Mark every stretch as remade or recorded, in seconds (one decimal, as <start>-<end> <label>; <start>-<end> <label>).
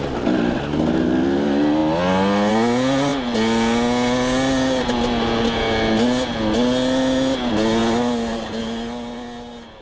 0.0-9.8 recorded